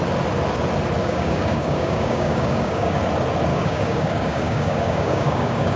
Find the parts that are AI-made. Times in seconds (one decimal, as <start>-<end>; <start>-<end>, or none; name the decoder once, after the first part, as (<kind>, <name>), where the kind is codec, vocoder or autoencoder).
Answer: 1.0-3.0 (codec, DAC); 3.5-5.8